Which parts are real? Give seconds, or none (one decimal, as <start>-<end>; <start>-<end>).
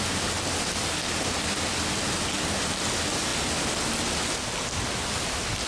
0.0-5.7